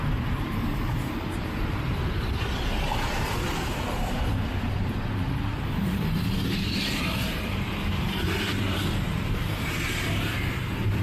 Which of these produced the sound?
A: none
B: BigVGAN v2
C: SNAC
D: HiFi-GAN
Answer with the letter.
B